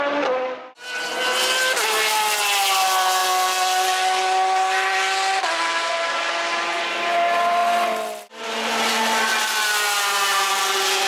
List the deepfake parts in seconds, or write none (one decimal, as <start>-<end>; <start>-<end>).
none